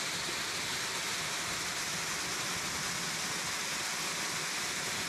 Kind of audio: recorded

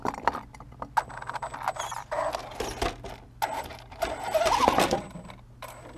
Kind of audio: recorded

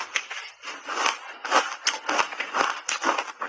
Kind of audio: recorded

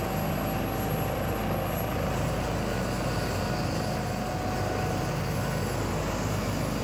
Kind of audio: recorded